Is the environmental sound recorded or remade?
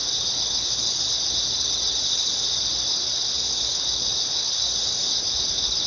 recorded